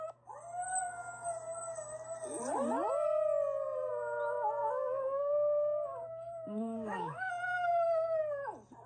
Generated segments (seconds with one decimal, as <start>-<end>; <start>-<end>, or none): 4.6-7.3